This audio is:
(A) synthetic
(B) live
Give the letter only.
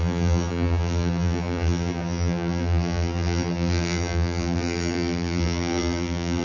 A